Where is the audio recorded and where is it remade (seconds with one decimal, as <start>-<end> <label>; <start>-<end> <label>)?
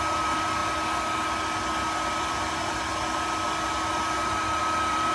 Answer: 0.0-0.6 remade; 0.6-2.2 recorded; 2.2-2.9 remade; 2.9-4.6 recorded; 4.6-5.1 remade